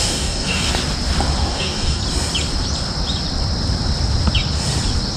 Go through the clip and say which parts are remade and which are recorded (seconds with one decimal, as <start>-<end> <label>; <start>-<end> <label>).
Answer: 0.0-0.7 remade; 0.7-1.4 recorded; 1.4-2.0 remade; 2.0-5.2 recorded

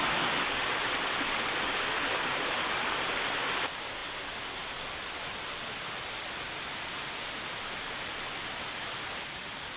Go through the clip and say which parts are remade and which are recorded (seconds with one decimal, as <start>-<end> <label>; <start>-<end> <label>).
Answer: 0.0-9.8 recorded

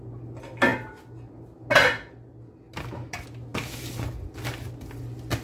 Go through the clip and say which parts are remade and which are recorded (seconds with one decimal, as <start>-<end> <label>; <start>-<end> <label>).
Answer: 0.0-5.4 recorded

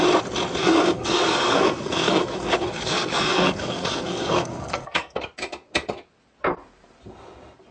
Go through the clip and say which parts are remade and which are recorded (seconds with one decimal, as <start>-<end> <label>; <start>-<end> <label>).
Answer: 0.0-0.6 recorded; 0.6-5.2 remade; 5.2-7.7 recorded